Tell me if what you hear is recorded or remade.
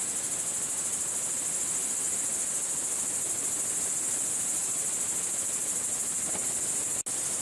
recorded